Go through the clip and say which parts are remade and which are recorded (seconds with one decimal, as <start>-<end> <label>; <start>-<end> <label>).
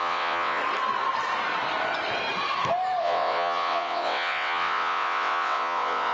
0.0-0.6 remade; 0.6-3.0 recorded; 3.0-6.1 remade